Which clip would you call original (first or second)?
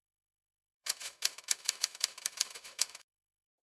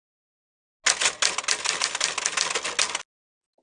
second